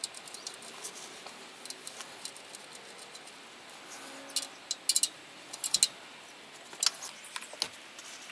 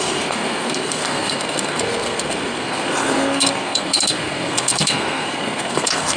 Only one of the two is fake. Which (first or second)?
second